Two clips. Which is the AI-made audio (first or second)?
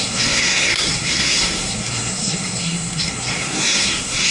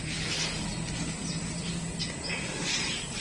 first